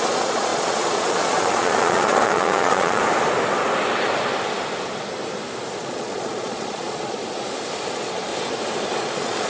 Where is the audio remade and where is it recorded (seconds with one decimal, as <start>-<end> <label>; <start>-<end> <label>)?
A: 0.0-3.0 remade; 3.0-5.8 recorded; 5.8-7.2 remade; 7.2-7.9 recorded; 7.9-8.3 remade; 8.3-9.0 recorded; 9.0-9.5 remade